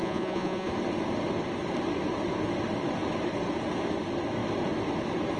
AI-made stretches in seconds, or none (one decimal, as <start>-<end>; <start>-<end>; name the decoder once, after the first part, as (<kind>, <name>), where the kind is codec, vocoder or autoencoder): 0.0-0.7 (vocoder, Vocos)